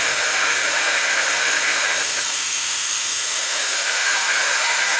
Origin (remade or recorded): remade